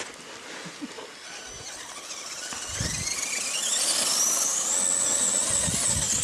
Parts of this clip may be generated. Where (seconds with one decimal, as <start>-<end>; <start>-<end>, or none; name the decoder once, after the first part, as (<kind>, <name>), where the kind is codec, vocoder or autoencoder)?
none